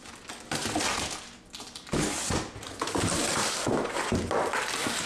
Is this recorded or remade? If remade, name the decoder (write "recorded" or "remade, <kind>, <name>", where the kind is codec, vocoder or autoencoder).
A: recorded